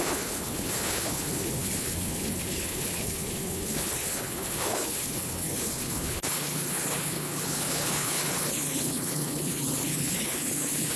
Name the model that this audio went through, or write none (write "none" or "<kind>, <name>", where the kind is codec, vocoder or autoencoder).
codec, HILCodec